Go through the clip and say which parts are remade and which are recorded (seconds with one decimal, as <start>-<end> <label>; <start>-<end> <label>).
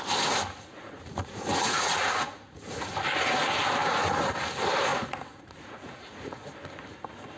0.0-0.7 recorded; 0.7-2.9 remade; 2.9-4.9 recorded; 4.9-6.5 remade; 6.5-7.4 recorded